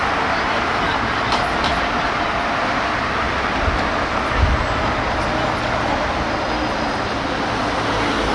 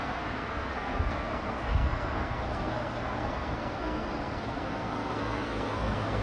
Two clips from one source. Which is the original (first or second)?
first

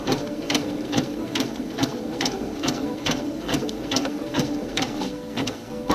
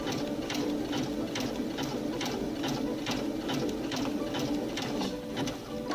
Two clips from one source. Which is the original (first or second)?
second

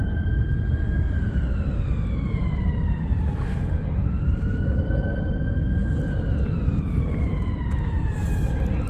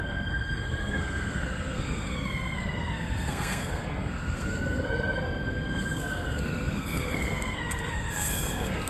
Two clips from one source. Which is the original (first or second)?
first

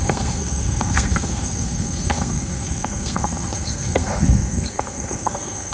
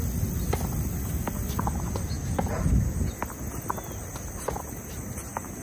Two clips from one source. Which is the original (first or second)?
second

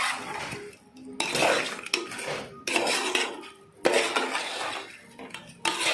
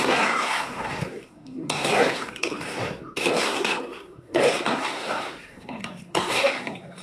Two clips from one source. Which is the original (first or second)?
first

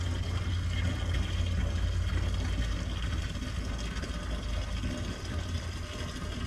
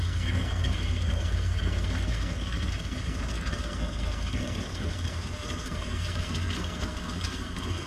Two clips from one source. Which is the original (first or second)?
first